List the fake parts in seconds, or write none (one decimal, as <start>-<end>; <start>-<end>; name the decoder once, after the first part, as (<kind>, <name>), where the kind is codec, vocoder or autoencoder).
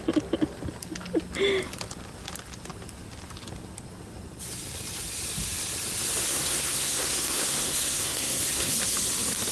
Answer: 6.3-8.8 (codec, SNAC)